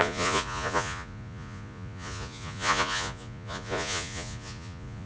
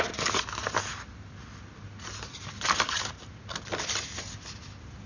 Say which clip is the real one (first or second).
second